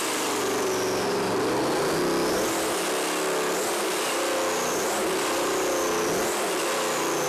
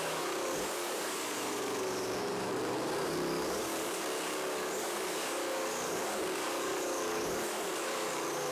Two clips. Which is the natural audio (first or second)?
first